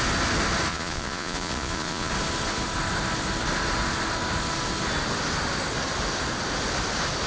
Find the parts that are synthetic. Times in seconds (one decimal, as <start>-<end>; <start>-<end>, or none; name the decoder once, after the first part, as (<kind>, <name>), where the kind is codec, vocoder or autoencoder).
0.7-2.1 (vocoder, Vocos)